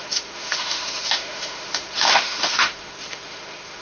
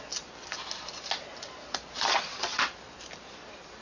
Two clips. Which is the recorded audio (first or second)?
second